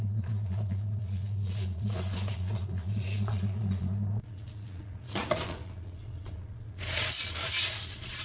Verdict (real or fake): fake